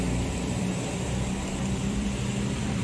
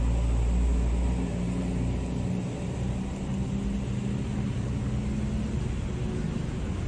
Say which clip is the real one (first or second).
second